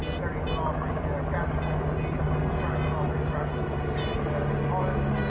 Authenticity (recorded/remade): recorded